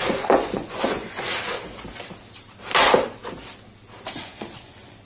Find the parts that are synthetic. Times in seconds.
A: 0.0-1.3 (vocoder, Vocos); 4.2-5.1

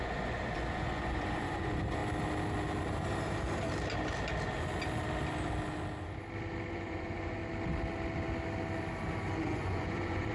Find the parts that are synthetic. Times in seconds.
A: 0.0-2.0 (vocoder, Vocos); 6.7-7.4; 9.4-10.3

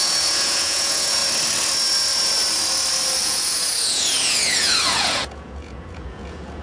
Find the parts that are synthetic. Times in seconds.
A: 0.0-1.2 (vocoder, Vocos); 3.2-6.6